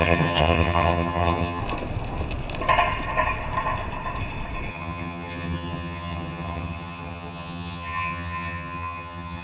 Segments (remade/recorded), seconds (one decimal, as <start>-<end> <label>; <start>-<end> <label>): 0.0-1.6 remade; 1.6-4.7 recorded; 4.7-9.4 remade